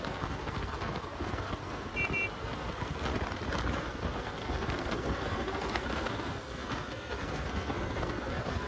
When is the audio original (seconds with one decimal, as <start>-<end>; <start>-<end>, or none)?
1.9-2.4; 3.1-3.8